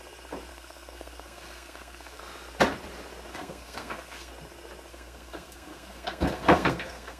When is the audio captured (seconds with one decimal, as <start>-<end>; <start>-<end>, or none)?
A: 0.0-0.5; 2.2-3.3; 4.3-4.9